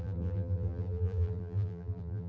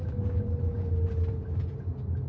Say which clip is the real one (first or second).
second